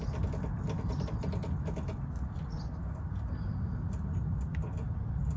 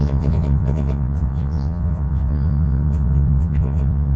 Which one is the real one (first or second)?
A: first